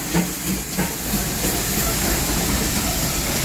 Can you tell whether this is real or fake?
real